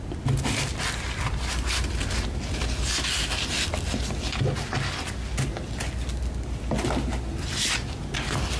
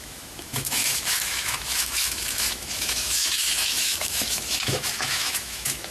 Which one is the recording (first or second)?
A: first